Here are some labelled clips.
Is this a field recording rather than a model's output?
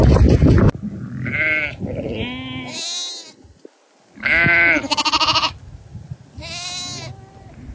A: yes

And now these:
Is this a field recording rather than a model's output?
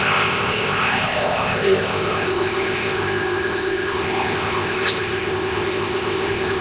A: no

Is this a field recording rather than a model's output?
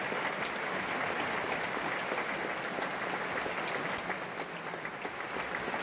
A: yes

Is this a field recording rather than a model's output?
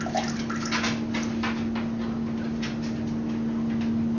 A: yes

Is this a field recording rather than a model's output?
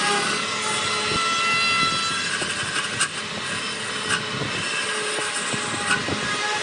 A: yes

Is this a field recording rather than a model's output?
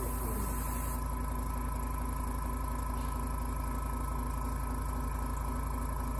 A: yes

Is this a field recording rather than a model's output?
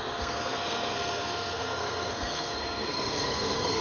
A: no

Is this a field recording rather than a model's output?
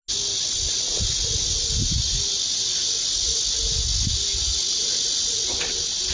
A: yes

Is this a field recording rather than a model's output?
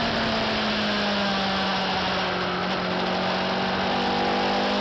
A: yes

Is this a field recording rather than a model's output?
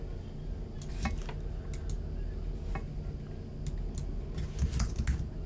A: yes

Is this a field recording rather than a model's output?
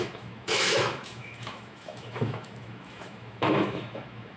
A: no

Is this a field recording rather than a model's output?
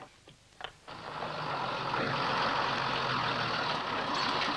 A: yes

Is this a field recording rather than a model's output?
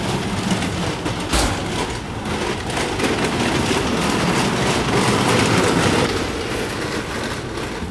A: yes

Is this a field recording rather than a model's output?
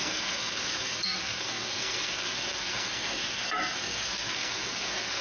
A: no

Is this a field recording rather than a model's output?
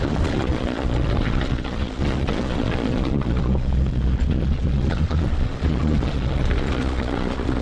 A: no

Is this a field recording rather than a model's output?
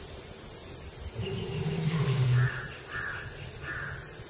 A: yes